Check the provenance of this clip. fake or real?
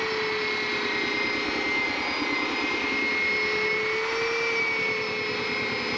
real